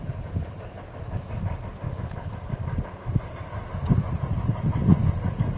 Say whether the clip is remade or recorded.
recorded